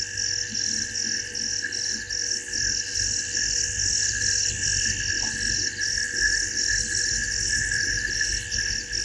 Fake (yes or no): no